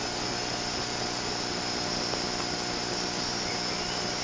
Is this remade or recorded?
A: recorded